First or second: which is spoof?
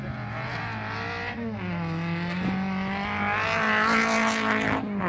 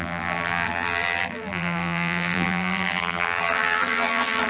second